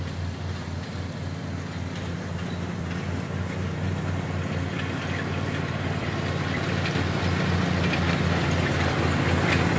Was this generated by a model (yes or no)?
no